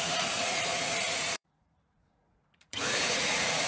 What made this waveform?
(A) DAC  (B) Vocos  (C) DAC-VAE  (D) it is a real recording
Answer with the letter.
B